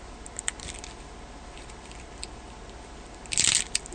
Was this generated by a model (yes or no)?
no